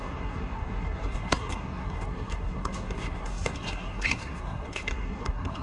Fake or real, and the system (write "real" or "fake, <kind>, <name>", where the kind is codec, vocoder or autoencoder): fake, codec, SNAC